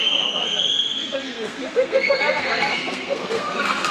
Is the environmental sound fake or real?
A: fake